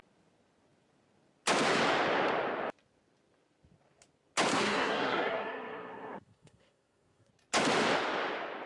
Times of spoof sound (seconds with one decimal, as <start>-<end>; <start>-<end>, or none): 4.5-7.3